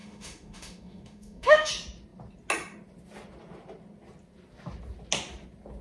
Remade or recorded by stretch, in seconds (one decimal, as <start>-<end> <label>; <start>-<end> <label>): 0.0-1.7 remade; 1.7-5.8 recorded

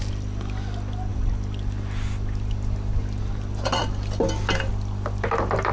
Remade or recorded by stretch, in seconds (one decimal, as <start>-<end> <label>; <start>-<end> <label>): 0.0-5.7 recorded

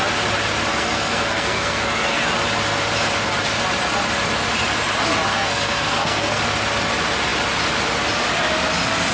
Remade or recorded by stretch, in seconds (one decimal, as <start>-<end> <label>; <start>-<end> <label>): 0.0-0.7 recorded; 0.7-2.2 remade; 2.2-5.3 recorded; 5.3-6.4 remade; 6.4-9.1 recorded